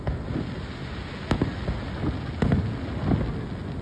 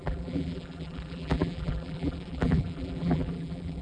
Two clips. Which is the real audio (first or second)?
first